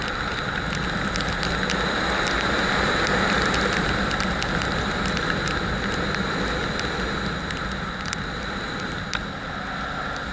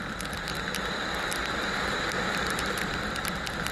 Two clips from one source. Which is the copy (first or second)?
second